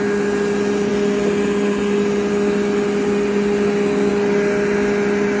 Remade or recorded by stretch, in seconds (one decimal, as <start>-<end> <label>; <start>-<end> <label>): 0.0-5.4 recorded